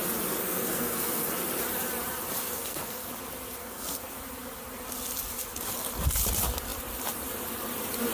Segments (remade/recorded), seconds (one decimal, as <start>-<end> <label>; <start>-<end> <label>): 0.0-0.4 recorded; 0.4-1.3 remade; 1.3-2.4 recorded; 2.4-3.1 remade; 3.1-3.6 recorded; 3.6-4.2 remade; 4.2-8.1 recorded